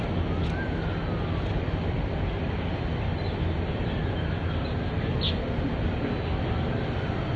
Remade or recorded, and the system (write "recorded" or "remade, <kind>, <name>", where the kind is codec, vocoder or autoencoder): recorded